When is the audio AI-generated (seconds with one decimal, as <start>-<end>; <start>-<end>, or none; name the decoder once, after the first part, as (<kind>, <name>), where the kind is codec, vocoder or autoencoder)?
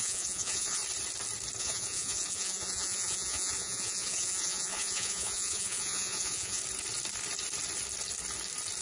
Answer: 0.0-0.8 (vocoder, Vocos); 1.6-6.6